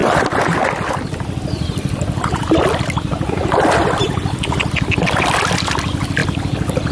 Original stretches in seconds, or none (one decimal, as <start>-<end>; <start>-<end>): 2.8-6.2